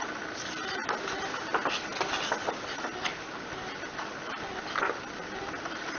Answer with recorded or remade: recorded